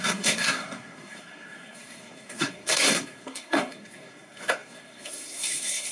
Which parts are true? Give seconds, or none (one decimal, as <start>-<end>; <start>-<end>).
none